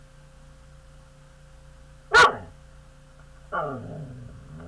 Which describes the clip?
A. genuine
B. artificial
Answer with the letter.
A